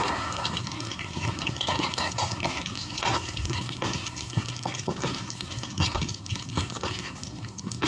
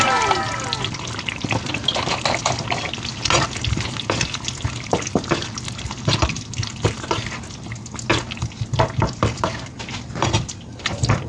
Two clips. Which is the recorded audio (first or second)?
second